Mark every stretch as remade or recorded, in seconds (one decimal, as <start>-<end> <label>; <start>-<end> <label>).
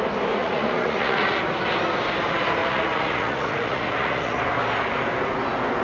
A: 0.0-0.4 recorded; 0.4-1.4 remade; 1.4-2.6 recorded; 2.6-4.4 remade; 4.4-5.8 recorded